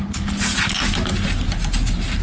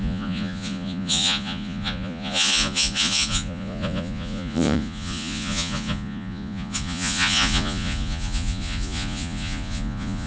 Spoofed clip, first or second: second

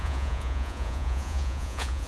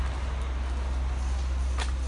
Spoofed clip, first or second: first